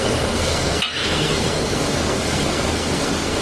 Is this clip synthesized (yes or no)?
yes